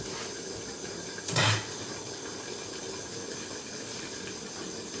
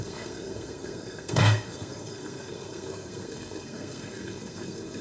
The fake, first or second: second